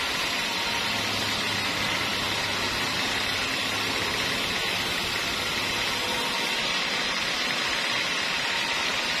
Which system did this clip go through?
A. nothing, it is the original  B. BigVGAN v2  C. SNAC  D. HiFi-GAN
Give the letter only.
A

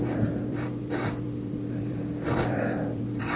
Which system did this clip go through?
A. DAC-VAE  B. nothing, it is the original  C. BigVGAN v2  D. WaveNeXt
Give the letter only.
C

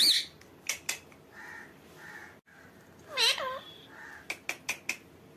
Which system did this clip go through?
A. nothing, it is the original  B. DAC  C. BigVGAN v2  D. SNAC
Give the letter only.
A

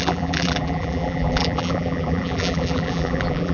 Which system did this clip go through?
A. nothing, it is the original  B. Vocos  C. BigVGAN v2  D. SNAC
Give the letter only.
C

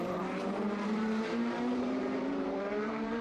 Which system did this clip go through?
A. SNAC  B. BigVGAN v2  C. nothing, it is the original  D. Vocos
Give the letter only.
B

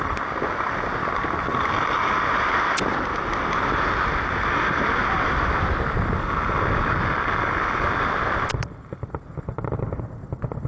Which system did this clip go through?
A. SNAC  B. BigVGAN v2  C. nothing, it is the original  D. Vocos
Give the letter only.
C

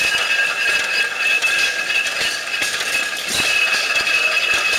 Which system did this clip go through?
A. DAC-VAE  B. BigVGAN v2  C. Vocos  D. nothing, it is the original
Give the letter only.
D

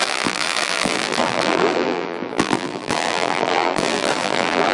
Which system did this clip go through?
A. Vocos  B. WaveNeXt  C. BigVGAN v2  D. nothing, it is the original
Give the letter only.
C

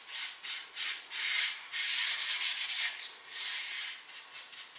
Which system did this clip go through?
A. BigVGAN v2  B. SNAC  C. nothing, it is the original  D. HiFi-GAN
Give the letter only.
C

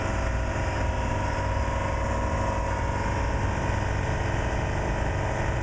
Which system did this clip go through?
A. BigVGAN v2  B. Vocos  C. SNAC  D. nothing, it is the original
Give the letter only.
D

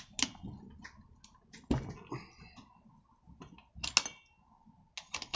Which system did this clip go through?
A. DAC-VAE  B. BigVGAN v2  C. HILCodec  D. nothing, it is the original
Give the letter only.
D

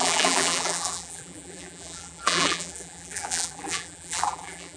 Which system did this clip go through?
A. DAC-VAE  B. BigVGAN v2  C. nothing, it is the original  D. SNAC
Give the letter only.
B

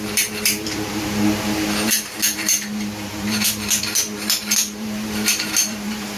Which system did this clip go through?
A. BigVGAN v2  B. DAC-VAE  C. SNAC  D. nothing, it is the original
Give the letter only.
A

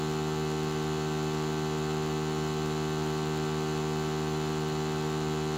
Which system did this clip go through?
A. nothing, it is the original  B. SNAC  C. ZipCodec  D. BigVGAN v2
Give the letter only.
D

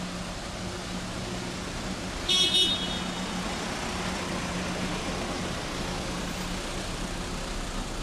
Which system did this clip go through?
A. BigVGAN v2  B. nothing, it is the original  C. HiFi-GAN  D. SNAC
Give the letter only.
B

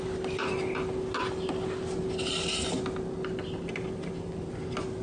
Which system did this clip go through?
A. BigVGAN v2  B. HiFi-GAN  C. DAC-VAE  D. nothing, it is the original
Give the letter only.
D